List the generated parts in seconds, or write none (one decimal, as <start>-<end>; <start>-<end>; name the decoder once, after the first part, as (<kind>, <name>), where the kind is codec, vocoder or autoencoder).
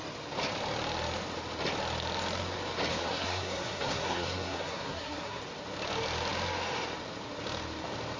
2.9-5.4 (codec, SNAC)